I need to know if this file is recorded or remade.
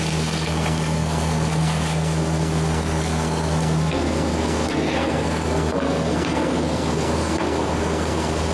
remade